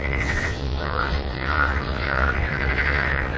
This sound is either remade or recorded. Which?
remade